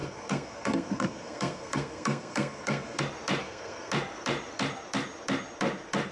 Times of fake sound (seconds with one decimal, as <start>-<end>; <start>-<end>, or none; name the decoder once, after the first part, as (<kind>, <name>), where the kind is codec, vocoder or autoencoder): 0.0-3.0 (codec, SNAC); 3.4-3.9